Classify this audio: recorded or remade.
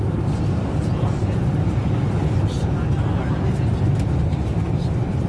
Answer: recorded